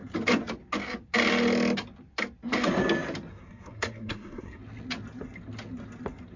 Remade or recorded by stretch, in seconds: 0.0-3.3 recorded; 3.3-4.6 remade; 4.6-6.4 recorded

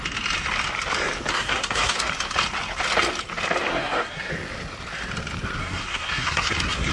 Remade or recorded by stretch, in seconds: 0.0-1.3 recorded; 1.3-2.1 remade; 2.1-3.7 recorded; 3.7-4.3 remade; 4.3-5.6 recorded; 5.6-6.9 remade

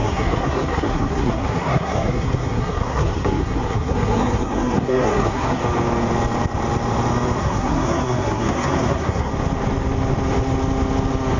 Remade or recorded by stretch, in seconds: 0.0-5.6 remade; 5.6-7.4 recorded; 7.4-9.3 remade; 9.3-11.4 recorded

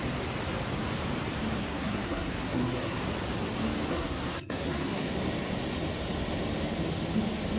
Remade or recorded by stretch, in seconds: 0.0-1.6 recorded; 1.6-3.0 remade; 3.0-3.9 recorded; 3.9-5.1 remade; 5.1-7.6 recorded